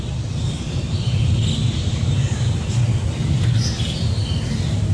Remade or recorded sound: recorded